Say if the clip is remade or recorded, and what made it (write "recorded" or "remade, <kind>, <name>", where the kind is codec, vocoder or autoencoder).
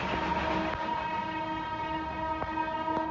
recorded